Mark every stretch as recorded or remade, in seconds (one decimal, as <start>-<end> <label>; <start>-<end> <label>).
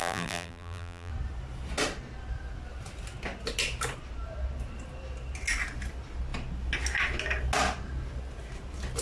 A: 0.0-1.1 remade; 1.1-9.0 recorded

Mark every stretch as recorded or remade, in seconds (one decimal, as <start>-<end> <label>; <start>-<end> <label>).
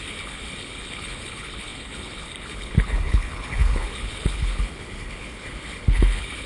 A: 0.0-6.5 remade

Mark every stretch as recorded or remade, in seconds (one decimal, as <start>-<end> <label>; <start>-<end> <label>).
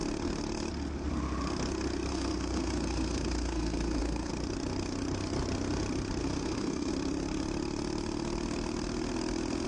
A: 0.0-2.1 recorded; 2.1-4.3 remade; 4.3-6.2 recorded; 6.2-6.9 remade; 6.9-9.7 recorded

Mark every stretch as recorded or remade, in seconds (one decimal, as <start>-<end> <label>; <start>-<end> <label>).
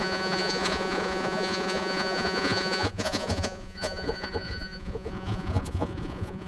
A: 0.0-6.5 remade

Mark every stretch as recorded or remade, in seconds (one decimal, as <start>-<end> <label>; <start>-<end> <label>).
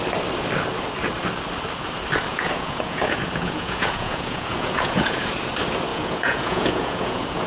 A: 0.0-2.3 recorded; 2.3-5.3 remade; 5.3-5.9 recorded; 5.9-7.5 remade